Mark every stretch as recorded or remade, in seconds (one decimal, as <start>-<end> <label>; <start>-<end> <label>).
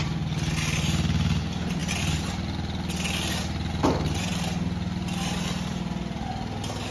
0.0-6.9 recorded